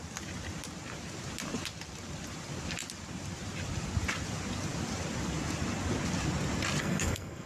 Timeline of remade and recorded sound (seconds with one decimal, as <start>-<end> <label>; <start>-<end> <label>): 0.0-6.8 recorded; 6.8-7.5 remade